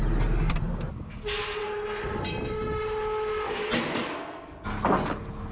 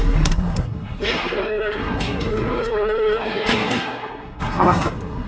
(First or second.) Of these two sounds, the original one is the first